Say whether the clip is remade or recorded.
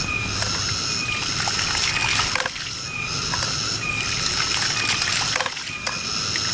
recorded